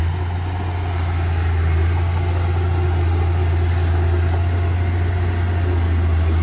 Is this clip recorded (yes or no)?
yes